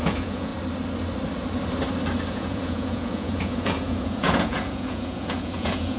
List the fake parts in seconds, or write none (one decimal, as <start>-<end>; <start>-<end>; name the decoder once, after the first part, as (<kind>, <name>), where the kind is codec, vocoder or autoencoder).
0.0-0.5 (vocoder, Vocos); 2.3-6.0